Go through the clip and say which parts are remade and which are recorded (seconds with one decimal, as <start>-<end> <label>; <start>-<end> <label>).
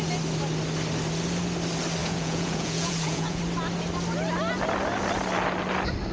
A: 0.0-2.0 recorded; 2.0-3.4 remade; 3.4-6.1 recorded